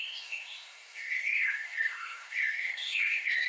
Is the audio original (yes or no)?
no